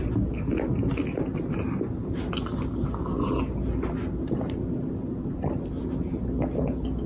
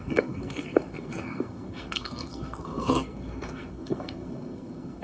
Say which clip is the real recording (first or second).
first